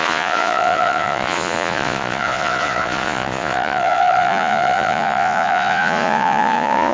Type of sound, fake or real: fake